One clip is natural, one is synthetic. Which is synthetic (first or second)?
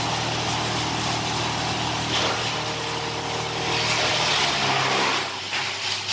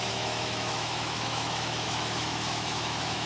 second